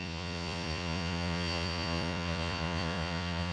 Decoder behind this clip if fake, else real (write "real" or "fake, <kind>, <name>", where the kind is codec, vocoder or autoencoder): fake, vocoder, Vocos